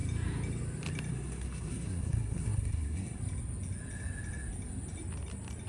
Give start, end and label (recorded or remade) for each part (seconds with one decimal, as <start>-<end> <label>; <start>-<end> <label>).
0.0-1.1 recorded; 1.1-3.2 remade; 3.2-5.7 recorded